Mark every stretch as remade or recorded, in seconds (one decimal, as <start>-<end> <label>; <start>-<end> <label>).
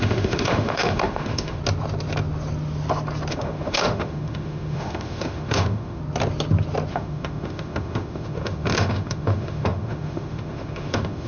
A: 0.0-1.6 remade; 1.6-3.3 recorded; 3.3-6.0 remade; 6.0-6.9 recorded; 6.9-11.3 remade